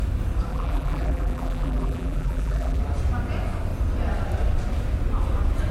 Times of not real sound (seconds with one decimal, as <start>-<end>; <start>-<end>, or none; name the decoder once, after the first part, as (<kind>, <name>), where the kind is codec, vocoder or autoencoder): 0.5-2.8 (vocoder, BigVGAN v2)

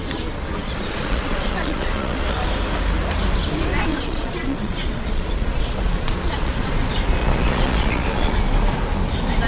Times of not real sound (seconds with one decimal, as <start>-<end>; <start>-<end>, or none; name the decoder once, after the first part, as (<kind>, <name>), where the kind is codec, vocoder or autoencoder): 0.6-2.4 (vocoder, Vocos); 3.9-6.7; 7.2-8.4

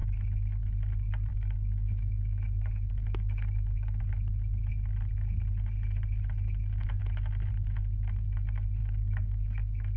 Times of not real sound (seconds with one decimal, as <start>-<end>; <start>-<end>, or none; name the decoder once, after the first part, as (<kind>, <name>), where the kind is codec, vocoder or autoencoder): 0.0-0.6 (codec, DAC); 1.3-4.0; 8.8-10.0

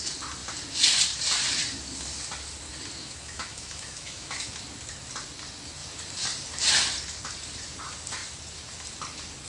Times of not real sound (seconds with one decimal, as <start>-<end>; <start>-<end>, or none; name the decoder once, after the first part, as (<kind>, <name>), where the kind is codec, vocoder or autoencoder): 3.0-4.6 (autoencoder, DAC-VAE)

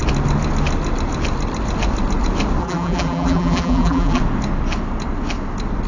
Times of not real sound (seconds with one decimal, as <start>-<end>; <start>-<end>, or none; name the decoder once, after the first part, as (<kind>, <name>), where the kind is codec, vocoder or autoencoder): 2.6-4.2 (vocoder, BigVGAN v2)

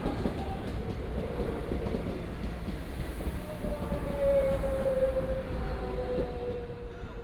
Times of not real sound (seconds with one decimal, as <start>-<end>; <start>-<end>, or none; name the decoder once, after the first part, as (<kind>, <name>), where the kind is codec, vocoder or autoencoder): 0.0-0.7 (vocoder, BigVGAN v2); 2.9-7.2